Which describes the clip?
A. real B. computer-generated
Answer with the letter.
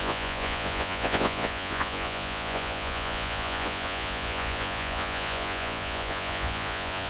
B